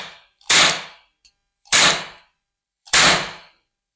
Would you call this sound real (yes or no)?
no